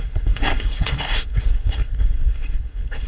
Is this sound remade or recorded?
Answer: remade